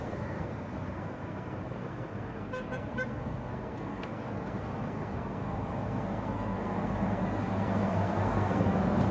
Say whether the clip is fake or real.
fake